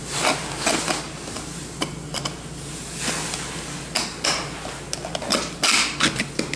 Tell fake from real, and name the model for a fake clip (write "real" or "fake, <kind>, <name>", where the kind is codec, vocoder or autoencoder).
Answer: real